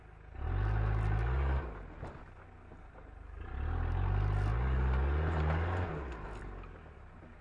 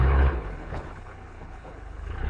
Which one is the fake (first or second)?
second